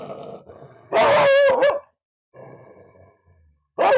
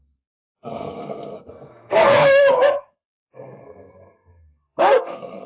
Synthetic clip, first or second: second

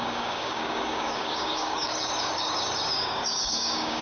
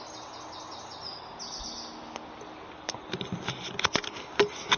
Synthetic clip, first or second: first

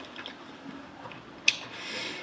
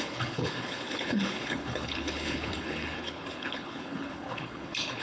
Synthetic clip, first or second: second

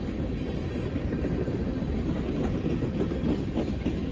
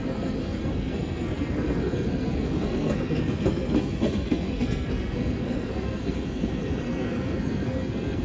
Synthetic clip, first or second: second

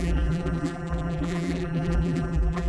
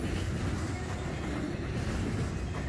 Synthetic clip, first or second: first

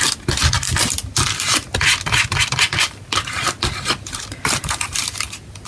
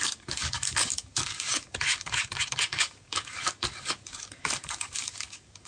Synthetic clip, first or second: second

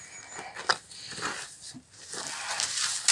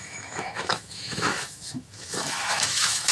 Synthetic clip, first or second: second